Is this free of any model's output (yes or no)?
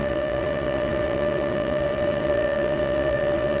no